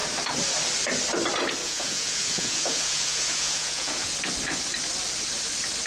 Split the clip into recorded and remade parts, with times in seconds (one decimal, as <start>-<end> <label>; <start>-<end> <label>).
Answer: 0.0-1.6 recorded; 1.6-4.1 remade; 4.1-5.9 recorded